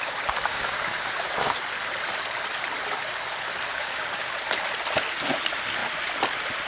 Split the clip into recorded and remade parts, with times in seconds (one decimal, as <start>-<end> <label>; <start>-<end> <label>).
0.0-0.5 recorded; 0.5-1.1 remade; 1.1-3.7 recorded; 3.7-4.3 remade; 4.3-6.7 recorded